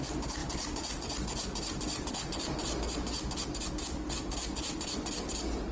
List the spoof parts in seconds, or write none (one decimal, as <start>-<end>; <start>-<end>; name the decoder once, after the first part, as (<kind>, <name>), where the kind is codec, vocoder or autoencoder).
none